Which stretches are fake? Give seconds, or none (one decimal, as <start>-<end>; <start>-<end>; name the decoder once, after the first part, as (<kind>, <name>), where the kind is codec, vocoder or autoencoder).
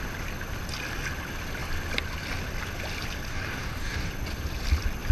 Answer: 3.3-4.1 (codec, DAC)